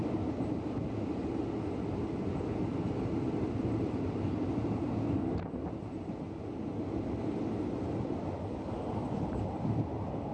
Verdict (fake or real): real